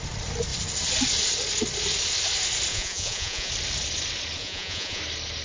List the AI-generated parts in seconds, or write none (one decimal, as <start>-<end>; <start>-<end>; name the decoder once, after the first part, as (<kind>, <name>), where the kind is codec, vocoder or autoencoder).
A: 2.7-3.5 (vocoder, Vocos); 4.4-5.0